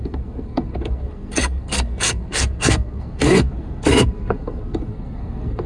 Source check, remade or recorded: remade